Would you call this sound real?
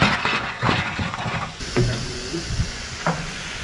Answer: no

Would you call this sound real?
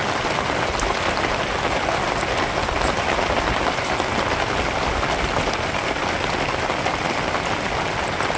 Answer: yes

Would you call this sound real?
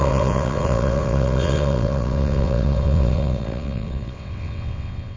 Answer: no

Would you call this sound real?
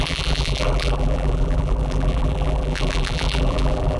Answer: no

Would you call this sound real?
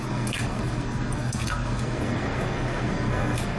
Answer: no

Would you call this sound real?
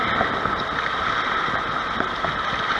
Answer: yes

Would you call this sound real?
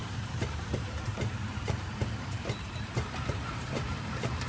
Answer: no